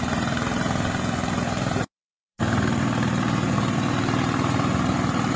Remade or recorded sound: remade